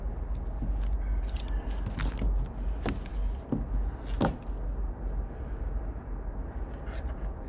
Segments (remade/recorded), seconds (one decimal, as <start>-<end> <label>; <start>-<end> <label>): 0.0-7.5 recorded